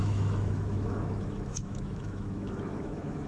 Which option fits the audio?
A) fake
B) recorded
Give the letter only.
A